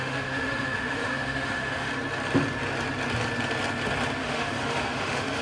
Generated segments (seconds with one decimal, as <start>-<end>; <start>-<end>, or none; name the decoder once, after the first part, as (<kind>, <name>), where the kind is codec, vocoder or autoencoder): 0.0-1.9 (autoencoder, DAC-VAE); 4.2-5.4